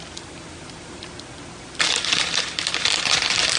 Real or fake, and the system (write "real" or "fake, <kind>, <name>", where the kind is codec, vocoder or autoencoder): real